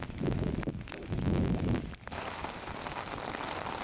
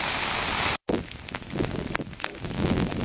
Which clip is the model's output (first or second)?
first